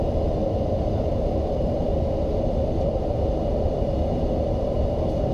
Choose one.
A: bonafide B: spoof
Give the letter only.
A